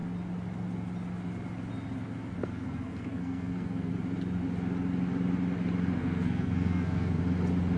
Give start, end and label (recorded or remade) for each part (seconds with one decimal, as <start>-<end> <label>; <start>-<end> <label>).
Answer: 0.0-2.4 recorded; 2.4-3.9 remade; 3.9-6.0 recorded; 6.0-7.2 remade; 7.2-7.8 recorded